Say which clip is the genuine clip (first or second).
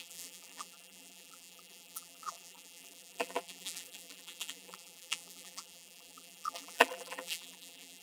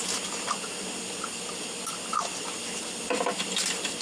second